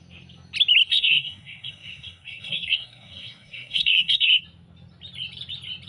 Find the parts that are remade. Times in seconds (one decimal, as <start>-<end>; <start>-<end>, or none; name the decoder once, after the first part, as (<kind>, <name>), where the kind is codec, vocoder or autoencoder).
0.9-4.4 (codec, SNAC)

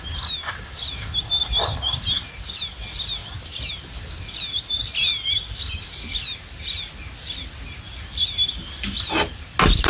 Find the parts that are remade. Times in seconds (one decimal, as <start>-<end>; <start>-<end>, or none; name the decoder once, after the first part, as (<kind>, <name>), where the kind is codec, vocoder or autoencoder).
none

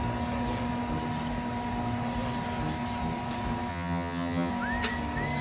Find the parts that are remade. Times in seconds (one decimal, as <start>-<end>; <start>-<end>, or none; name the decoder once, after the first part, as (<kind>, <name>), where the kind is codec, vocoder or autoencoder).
3.7-4.5 (vocoder, HiFi-GAN)

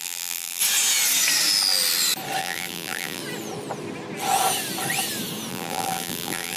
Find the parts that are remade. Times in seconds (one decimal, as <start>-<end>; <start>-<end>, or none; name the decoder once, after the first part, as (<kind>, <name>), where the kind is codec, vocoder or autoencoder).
0.0-0.6 (vocoder, BigVGAN v2); 2.4-3.2; 5.5-6.6

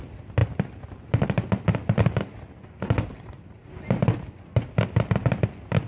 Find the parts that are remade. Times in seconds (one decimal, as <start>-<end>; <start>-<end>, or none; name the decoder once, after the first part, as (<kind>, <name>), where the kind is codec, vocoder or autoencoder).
none